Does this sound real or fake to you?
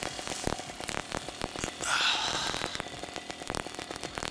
real